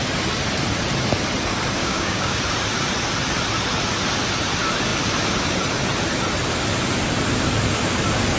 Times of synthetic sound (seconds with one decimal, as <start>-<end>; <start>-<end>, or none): 1.8-2.4